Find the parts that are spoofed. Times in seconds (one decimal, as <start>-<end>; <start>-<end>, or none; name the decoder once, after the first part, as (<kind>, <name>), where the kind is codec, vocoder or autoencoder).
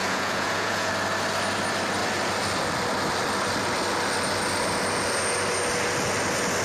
0.0-0.9 (vocoder, Vocos)